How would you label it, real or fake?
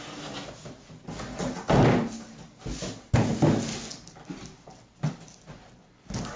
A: real